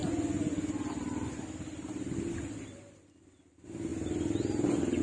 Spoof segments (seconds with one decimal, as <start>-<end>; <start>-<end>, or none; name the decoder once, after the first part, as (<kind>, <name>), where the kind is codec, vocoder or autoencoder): 0.0-3.9 (vocoder, BigVGAN v2)